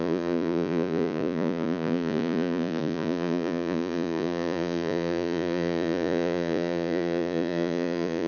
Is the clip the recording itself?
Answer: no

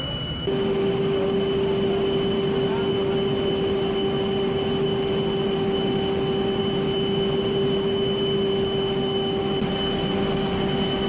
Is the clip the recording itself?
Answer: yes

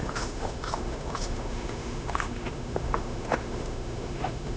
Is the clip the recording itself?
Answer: no